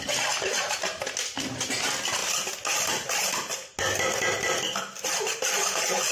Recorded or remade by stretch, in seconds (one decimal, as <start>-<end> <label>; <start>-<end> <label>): 0.0-6.1 recorded

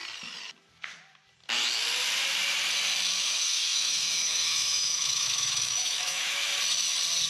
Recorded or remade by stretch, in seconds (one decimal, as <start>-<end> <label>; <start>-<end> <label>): 0.0-3.2 recorded; 3.2-6.5 remade; 6.5-7.3 recorded